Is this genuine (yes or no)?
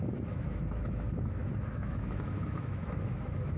no